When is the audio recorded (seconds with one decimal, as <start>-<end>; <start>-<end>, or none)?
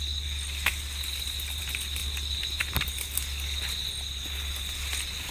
0.0-5.3